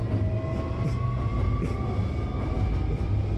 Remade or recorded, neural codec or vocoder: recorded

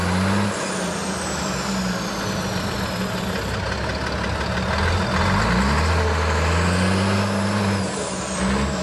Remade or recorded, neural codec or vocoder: recorded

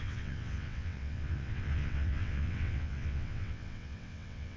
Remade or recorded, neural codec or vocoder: remade, vocoder, WaveNeXt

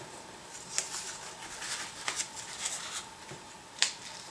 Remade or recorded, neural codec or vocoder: recorded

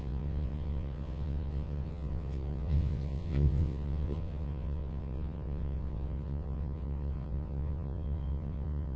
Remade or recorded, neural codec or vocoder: remade, vocoder, WaveNeXt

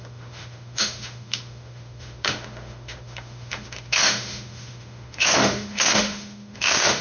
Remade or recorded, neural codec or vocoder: remade, autoencoder, DAC-VAE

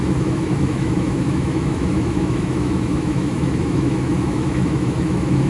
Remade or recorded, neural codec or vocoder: remade, autoencoder, DAC-VAE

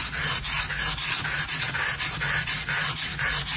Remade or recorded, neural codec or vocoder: recorded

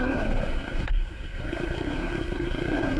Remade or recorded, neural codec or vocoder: remade, codec, SNAC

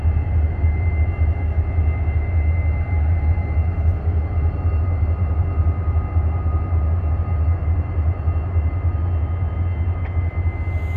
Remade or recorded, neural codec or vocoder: recorded